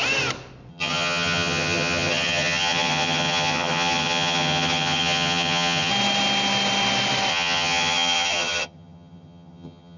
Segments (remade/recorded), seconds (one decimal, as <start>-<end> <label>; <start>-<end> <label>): 0.0-0.7 recorded; 0.7-5.9 remade; 5.9-7.3 recorded; 7.3-10.0 remade